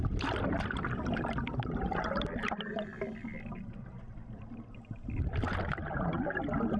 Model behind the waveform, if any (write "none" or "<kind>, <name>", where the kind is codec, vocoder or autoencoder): none